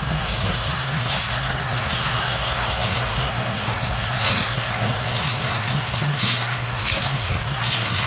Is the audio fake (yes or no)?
yes